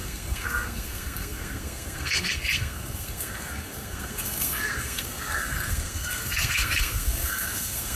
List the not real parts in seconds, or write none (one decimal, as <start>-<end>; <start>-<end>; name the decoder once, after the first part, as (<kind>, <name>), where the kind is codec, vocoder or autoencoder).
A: 0.0-8.0 (codec, SNAC)